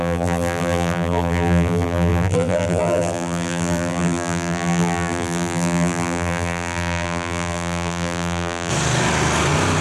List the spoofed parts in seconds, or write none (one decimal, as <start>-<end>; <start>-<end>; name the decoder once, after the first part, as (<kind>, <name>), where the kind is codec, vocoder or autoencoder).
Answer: 0.0-8.7 (vocoder, BigVGAN v2)